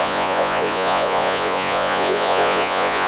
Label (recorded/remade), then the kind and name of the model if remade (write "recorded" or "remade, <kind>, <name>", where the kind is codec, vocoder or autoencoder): remade, vocoder, Vocos